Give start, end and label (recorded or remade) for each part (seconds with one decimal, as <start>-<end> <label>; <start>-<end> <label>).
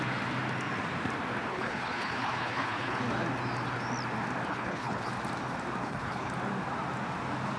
0.0-1.5 recorded; 1.5-3.0 remade; 3.0-4.5 recorded; 4.5-5.1 remade; 5.1-5.8 recorded; 5.8-6.3 remade; 6.3-7.6 recorded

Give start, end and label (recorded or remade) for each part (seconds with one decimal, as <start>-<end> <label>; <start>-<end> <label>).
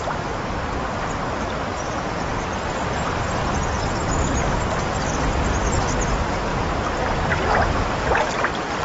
0.0-1.7 recorded; 1.7-2.3 remade; 2.3-8.8 recorded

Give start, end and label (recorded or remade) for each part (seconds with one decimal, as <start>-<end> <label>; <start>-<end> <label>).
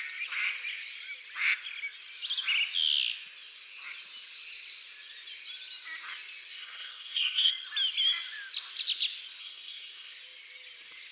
0.0-6.5 recorded; 6.5-7.5 remade; 7.5-9.4 recorded; 9.4-10.2 remade; 10.2-11.1 recorded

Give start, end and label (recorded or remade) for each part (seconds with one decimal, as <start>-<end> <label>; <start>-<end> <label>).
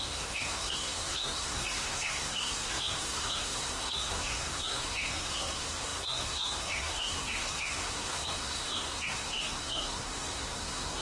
0.0-11.0 remade